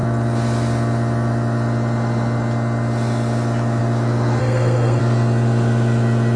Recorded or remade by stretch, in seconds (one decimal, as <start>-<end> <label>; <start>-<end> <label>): 0.0-4.4 recorded; 4.4-5.0 remade; 5.0-6.4 recorded